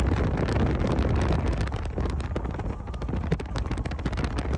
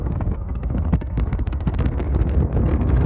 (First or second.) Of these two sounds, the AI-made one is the second